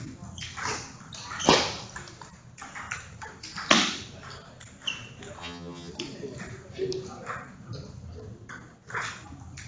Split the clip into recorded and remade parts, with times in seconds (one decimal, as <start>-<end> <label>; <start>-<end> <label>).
0.0-5.4 recorded; 5.4-5.9 remade; 5.9-9.7 recorded